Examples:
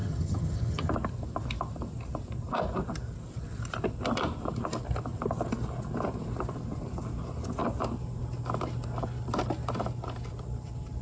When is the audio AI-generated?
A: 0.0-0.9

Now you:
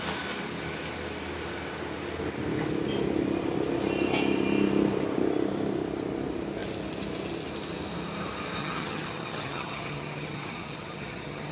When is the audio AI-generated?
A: 8.6-11.5

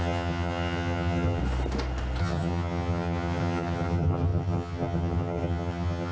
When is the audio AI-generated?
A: 0.0-1.4; 2.2-6.1

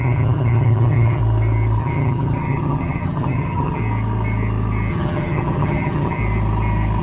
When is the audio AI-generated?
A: 0.0-1.2; 1.8-3.8; 4.9-6.2

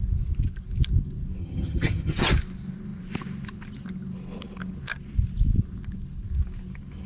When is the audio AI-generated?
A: 1.4-2.3

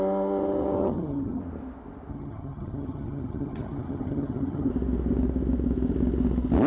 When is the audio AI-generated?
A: 0.8-1.4; 2.1-4.7